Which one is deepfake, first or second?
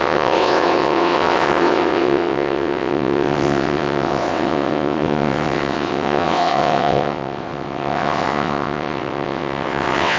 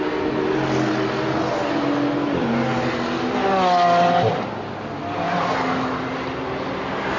first